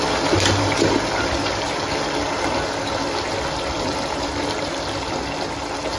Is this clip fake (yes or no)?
no